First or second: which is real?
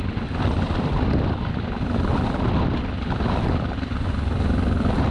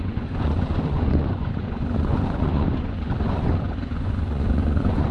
first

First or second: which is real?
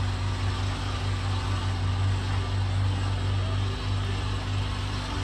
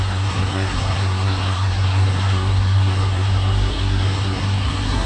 first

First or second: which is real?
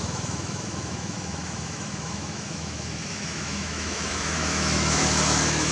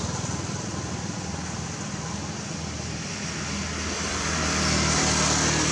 second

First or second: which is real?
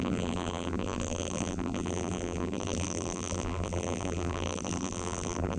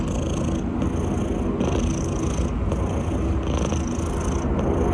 second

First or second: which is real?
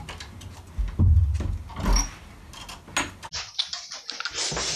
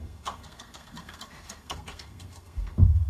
first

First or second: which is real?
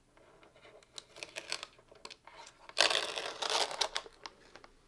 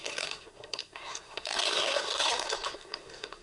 first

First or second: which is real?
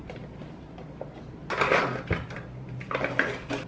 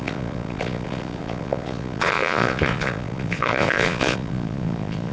first